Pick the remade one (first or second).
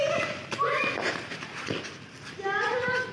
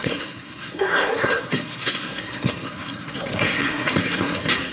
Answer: second